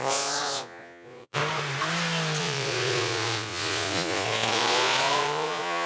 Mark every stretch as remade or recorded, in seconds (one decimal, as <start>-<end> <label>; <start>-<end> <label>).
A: 0.0-1.4 remade; 1.4-2.4 recorded; 2.4-5.9 remade